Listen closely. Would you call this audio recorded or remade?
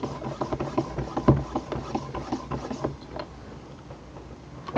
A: recorded